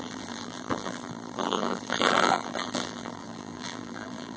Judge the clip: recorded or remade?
remade